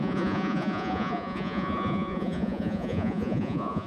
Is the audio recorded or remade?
remade